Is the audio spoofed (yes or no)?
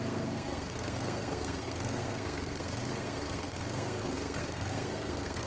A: yes